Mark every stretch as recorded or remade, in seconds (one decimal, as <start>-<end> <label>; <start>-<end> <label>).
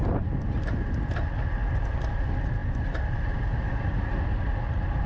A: 0.0-5.1 recorded